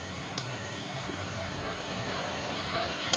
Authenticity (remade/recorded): remade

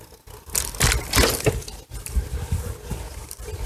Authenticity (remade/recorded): recorded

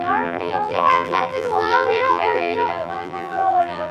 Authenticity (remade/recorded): remade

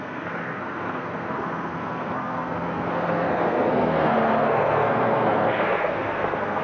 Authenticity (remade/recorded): remade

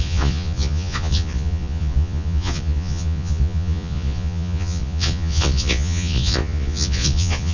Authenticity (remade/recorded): remade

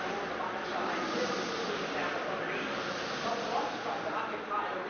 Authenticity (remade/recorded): recorded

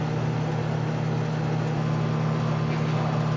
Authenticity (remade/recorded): recorded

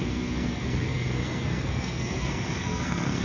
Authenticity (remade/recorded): remade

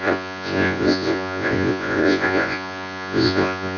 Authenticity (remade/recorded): remade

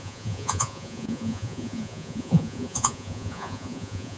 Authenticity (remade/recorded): remade